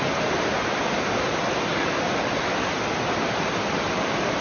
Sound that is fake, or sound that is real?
real